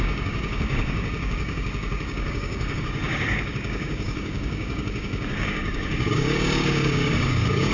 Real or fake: fake